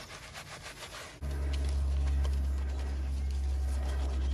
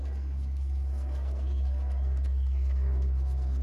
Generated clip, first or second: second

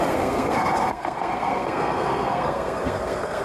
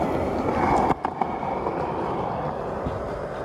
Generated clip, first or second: first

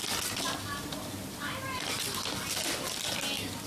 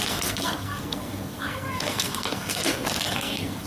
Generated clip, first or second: second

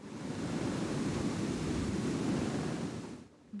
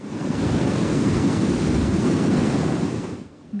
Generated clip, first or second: second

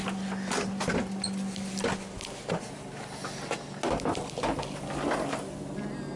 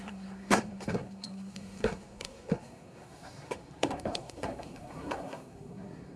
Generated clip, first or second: second